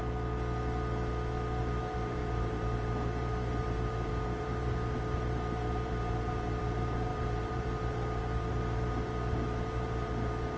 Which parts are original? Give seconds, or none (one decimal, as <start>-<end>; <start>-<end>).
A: 0.0-1.6